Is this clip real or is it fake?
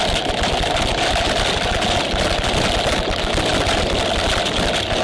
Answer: real